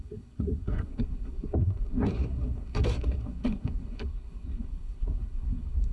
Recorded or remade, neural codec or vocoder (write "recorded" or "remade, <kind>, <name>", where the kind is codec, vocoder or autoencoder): remade, codec, SNAC